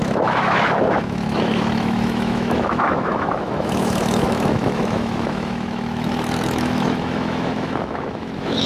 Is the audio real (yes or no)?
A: no